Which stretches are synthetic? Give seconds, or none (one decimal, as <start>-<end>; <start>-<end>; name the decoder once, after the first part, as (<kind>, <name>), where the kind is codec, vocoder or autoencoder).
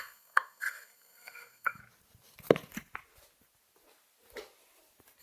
0.0-1.8 (codec, SNAC)